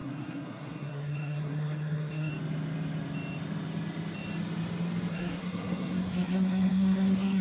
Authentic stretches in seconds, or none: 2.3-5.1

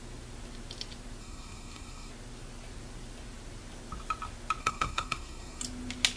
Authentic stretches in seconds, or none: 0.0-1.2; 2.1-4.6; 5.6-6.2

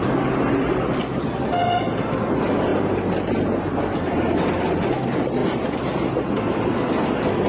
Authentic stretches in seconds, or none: 0.0-7.5